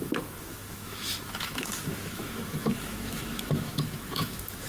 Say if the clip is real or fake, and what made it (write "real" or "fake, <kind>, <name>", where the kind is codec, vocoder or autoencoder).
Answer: fake, autoencoder, DAC-VAE